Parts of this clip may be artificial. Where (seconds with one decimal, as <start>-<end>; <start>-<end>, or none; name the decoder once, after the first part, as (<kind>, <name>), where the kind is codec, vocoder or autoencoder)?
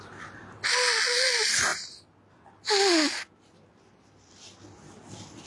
none